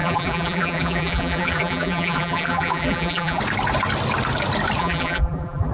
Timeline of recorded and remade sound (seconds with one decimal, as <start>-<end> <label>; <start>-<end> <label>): 0.0-3.4 remade; 3.4-4.8 recorded; 4.8-5.7 remade